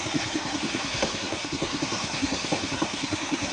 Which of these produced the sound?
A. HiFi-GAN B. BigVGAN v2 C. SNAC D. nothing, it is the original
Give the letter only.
C